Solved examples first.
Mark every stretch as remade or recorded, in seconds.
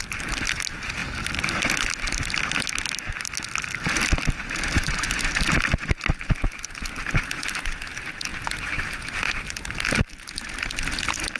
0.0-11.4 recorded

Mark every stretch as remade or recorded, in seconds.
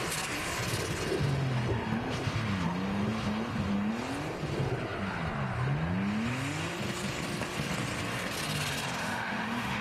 0.0-9.0 recorded; 9.0-9.8 remade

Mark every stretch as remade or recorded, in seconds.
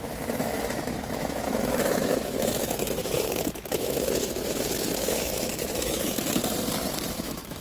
0.0-6.4 remade; 6.4-7.1 recorded; 7.1-7.6 remade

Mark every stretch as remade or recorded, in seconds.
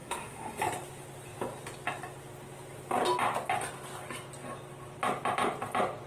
0.0-0.6 remade; 0.6-6.1 recorded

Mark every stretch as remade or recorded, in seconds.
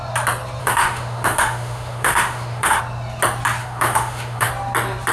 0.0-0.6 recorded; 0.6-2.8 remade; 2.8-3.6 recorded; 3.6-4.5 remade; 4.5-5.1 recorded